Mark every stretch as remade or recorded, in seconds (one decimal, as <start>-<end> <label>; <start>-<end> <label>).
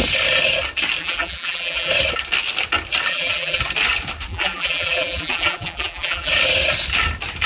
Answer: 0.0-1.0 recorded; 1.0-1.9 remade; 1.9-3.1 recorded; 3.1-3.6 remade; 3.6-4.3 recorded; 4.3-6.3 remade; 6.3-7.5 recorded